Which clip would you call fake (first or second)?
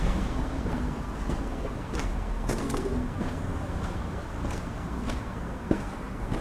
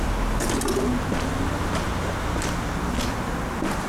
first